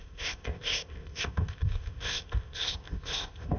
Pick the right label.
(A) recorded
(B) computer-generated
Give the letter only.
B